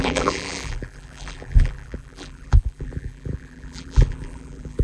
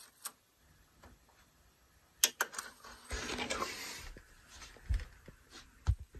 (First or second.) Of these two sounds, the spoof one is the first